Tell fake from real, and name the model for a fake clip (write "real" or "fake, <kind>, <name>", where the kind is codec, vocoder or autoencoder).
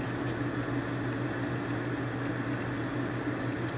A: real